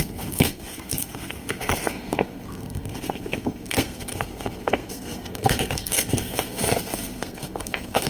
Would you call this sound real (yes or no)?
no